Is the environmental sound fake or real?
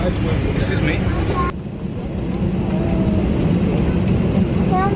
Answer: real